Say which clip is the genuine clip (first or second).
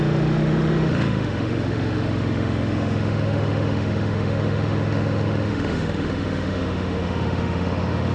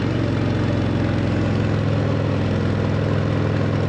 second